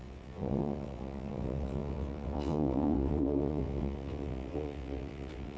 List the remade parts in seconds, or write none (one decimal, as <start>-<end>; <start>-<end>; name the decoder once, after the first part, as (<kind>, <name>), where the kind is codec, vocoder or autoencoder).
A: 0.0-5.6 (vocoder, WaveNeXt)